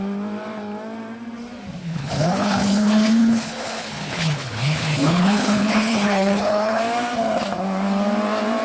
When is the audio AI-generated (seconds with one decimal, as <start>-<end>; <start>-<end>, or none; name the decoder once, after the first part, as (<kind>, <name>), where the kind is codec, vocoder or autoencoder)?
1.8-6.8 (codec, HILCodec)